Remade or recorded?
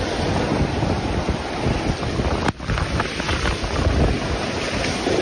recorded